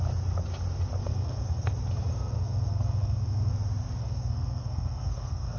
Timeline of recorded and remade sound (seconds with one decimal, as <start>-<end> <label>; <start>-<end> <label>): 0.0-1.0 recorded; 1.0-1.7 remade; 1.7-2.1 recorded; 2.1-3.5 remade; 3.5-4.0 recorded; 4.0-5.6 remade